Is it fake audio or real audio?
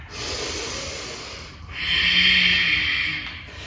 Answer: real